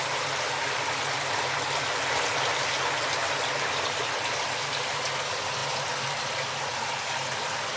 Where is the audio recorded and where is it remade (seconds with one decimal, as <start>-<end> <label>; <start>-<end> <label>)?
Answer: 0.0-7.8 recorded

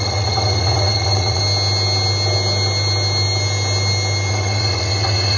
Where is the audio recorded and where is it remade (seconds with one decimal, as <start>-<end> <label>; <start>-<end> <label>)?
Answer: 0.0-1.4 remade; 1.4-4.3 recorded; 4.3-5.4 remade

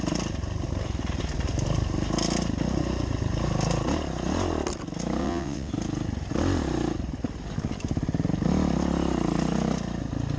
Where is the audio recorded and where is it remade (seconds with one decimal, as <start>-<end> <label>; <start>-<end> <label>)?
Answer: 0.0-5.2 recorded; 5.2-5.7 remade; 5.7-10.4 recorded